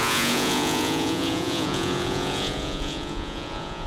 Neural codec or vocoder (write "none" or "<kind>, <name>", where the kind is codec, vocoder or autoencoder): vocoder, Vocos